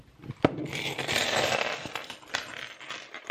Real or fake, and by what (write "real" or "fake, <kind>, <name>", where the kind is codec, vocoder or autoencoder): real